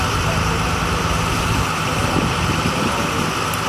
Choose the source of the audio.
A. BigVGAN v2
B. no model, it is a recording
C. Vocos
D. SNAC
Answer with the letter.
B